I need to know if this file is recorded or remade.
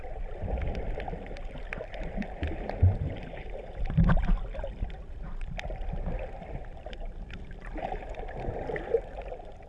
remade